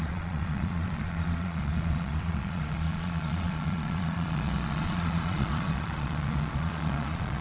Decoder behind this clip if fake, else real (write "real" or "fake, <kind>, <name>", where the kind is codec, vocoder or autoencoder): fake, vocoder, Vocos